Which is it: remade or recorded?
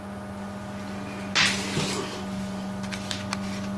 recorded